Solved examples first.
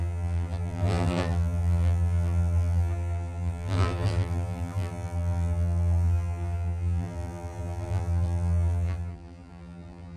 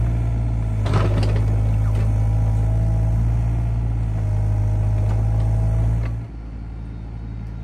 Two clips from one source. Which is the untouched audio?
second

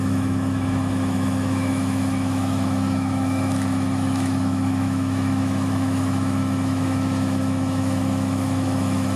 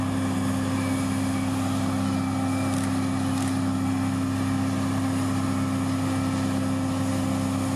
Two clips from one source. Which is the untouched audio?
second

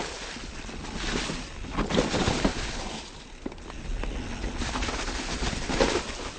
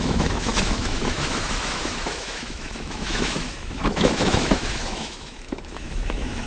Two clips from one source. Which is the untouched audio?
first